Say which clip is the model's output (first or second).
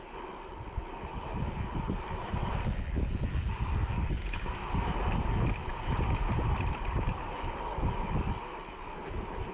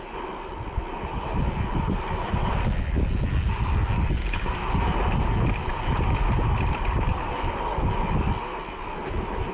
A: first